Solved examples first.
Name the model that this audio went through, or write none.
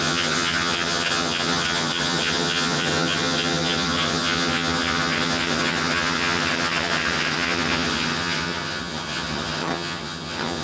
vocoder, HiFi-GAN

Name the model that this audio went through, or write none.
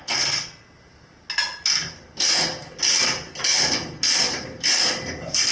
none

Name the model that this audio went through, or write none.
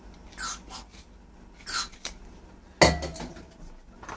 none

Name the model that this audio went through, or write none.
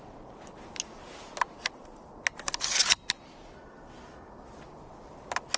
none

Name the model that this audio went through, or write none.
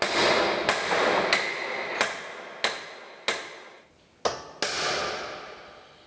none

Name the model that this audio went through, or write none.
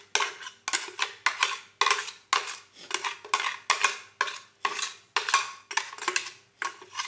none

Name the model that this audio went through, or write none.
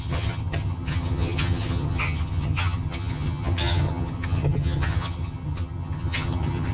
vocoder, HiFi-GAN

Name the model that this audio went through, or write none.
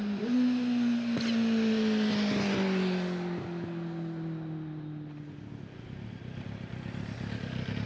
none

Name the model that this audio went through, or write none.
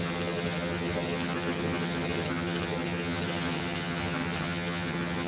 vocoder, HiFi-GAN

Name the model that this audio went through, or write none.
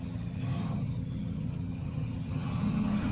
vocoder, HiFi-GAN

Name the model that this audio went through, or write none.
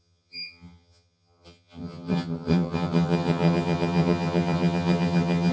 vocoder, HiFi-GAN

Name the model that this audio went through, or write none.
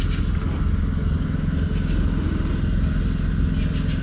none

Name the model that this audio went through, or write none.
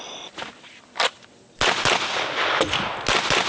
none